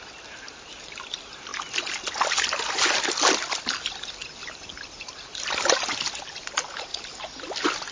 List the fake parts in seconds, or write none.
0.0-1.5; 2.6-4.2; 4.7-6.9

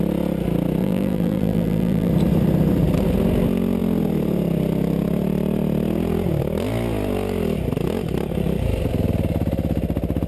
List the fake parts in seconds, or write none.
0.8-2.1

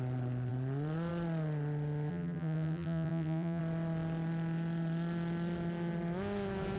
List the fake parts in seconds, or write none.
2.1-3.6

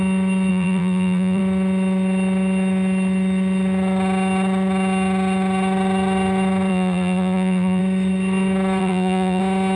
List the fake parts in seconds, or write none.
0.5-1.4; 6.7-7.8; 8.8-9.4

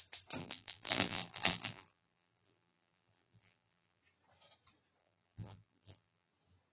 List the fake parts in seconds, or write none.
0.4-4.0; 5.0-6.3